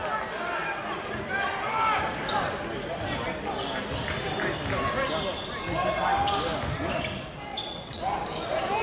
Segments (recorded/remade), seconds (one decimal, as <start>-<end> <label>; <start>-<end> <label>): 0.0-7.5 recorded; 7.5-8.0 remade; 8.0-8.8 recorded